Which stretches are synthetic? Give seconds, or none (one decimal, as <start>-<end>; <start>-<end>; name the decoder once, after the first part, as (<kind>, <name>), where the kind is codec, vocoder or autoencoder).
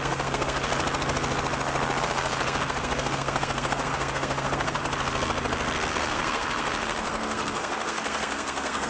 0.0-0.7 (codec, SNAC); 2.0-4.8; 5.9-8.9